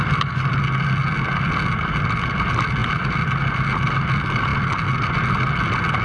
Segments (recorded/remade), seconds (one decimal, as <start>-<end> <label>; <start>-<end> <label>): 0.0-6.0 recorded